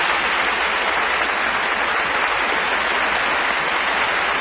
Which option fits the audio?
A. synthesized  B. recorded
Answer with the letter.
B